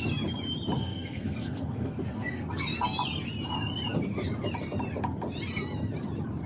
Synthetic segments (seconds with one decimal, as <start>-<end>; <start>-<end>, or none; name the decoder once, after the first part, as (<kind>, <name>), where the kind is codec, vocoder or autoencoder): 0.8-2.5 (codec, SNAC)

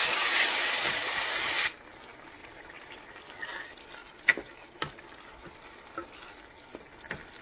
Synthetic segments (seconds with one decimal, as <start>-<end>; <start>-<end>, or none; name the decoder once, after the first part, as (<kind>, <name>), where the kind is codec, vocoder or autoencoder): 0.0-1.3 (vocoder, BigVGAN v2); 2.4-3.1

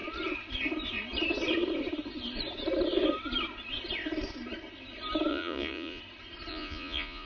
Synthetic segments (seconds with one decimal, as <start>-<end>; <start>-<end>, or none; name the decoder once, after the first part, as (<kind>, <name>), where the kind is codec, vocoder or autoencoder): 5.3-6.0 (vocoder, Vocos); 6.5-7.3

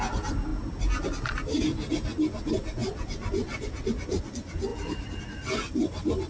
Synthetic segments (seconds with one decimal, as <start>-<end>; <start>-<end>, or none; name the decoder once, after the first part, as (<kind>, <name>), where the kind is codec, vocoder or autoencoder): 2.8-4.2 (vocoder, BigVGAN v2); 4.7-5.2

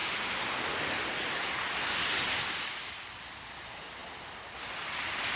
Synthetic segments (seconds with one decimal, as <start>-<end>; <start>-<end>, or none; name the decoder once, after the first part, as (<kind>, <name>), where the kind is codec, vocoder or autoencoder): none

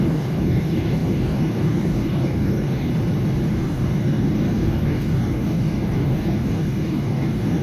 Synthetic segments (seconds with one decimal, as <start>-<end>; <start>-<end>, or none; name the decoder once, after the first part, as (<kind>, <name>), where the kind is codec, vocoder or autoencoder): 0.0-2.9 (codec, DAC); 3.5-7.6

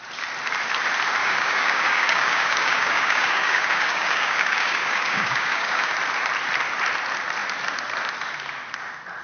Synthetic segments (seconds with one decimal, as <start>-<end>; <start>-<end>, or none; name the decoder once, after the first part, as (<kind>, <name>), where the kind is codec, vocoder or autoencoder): 1.2-5.9 (codec, DAC)

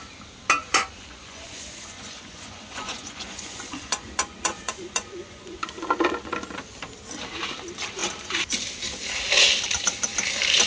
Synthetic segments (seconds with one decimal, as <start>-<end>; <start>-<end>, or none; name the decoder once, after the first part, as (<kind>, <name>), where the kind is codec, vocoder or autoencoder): 0.6-5.7 (vocoder, Vocos)